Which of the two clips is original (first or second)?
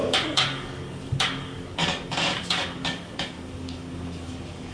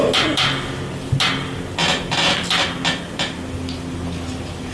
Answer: second